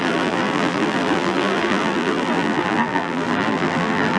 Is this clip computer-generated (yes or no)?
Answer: yes